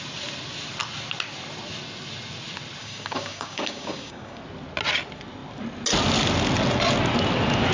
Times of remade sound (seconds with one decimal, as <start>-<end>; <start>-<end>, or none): 2.8-4.4